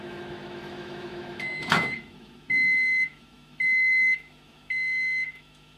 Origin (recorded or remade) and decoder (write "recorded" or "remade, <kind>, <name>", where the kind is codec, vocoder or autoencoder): remade, autoencoder, DAC-VAE